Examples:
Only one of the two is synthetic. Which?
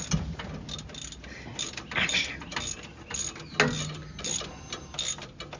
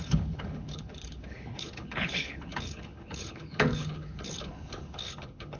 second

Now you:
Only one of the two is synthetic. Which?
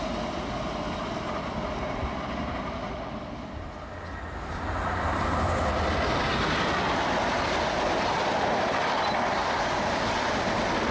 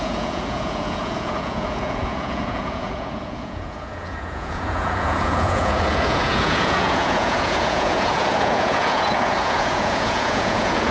second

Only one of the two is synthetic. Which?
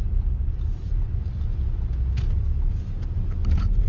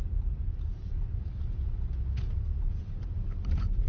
second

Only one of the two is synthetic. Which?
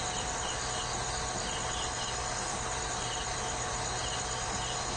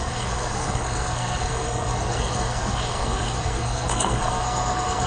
second